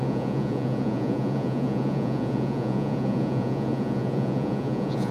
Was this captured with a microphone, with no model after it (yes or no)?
no